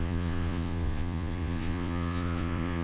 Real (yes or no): no